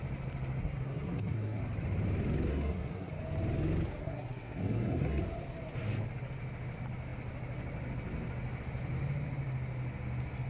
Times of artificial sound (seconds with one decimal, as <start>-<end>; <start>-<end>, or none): 0.6-1.6; 2.5-3.1; 4.0-5.2